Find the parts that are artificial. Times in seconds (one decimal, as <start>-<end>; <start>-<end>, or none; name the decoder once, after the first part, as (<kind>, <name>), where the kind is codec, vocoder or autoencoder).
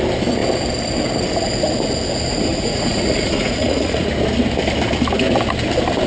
2.5-4.1 (vocoder, Vocos)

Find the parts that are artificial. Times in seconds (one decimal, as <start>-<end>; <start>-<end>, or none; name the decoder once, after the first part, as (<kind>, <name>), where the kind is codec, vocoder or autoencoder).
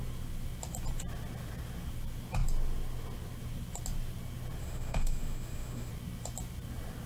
4.6-5.9 (autoencoder, DAC-VAE)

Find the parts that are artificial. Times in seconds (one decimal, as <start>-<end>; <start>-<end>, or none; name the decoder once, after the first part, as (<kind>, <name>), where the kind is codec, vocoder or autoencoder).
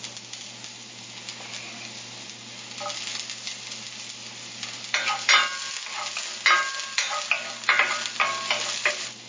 none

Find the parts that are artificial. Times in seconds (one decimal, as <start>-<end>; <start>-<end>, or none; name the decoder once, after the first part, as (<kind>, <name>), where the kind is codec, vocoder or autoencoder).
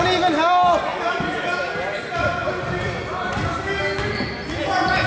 none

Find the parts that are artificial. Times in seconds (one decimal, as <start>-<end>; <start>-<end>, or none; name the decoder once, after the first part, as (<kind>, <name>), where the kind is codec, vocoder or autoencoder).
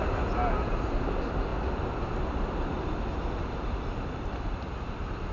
none